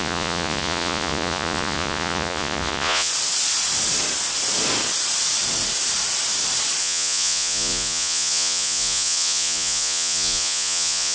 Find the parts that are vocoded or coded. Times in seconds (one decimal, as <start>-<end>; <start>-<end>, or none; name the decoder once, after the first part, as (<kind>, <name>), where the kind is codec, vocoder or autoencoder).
0.0-3.1 (vocoder, Vocos); 6.8-11.1